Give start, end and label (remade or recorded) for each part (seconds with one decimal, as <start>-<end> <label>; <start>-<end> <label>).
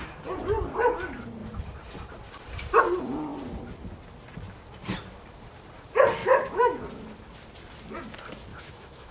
0.0-6.2 recorded; 6.2-6.8 remade; 6.8-8.5 recorded; 8.5-9.1 remade